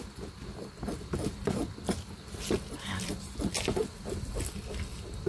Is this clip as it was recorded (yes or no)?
yes